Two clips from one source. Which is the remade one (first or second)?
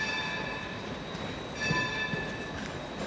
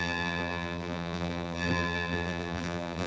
second